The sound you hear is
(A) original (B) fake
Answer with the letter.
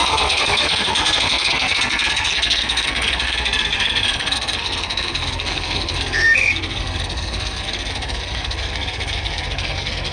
B